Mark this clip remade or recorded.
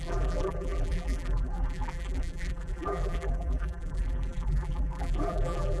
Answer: remade